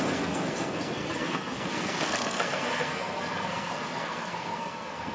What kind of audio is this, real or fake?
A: fake